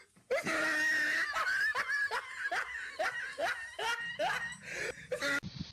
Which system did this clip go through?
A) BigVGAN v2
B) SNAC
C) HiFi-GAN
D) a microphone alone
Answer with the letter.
D